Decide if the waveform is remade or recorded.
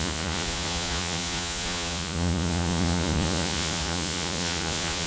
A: remade